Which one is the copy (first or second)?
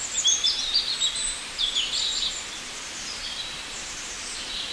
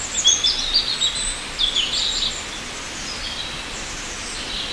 first